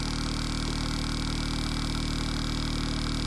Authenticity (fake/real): real